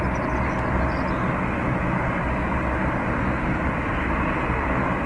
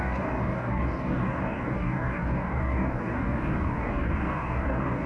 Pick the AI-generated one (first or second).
second